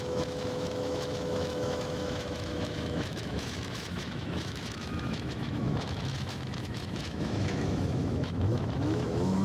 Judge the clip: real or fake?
fake